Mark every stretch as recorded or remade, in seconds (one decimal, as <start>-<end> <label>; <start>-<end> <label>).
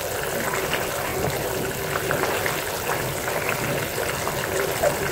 0.0-5.1 recorded